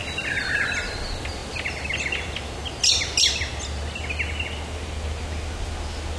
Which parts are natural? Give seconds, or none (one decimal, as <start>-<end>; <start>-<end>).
0.0-6.2